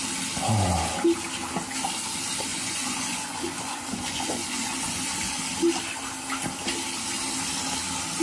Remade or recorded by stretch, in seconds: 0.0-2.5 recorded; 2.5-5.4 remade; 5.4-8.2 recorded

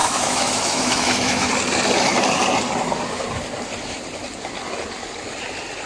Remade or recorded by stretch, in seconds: 0.0-1.5 remade; 1.5-5.9 recorded

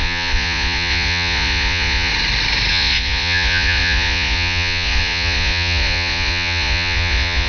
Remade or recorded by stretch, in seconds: 0.0-2.1 remade; 2.1-2.7 recorded; 2.7-7.5 remade

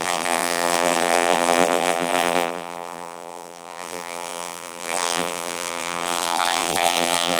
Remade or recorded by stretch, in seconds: 0.0-7.4 remade